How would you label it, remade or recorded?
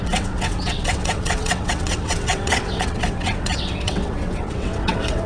remade